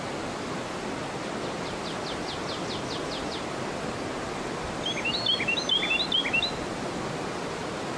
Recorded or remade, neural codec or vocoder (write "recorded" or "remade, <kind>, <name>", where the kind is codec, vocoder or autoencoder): recorded